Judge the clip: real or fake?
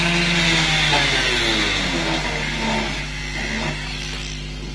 real